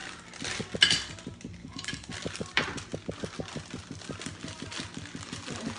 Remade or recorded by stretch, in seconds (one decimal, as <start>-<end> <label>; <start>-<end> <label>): 0.0-1.6 recorded; 1.6-2.1 remade; 2.1-5.8 recorded